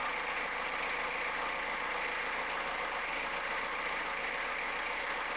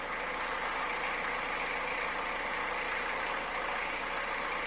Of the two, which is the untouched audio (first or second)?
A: first